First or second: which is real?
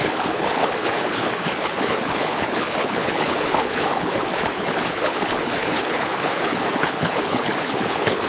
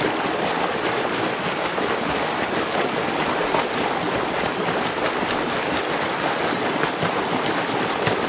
second